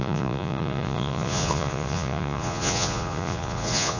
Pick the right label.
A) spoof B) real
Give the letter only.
A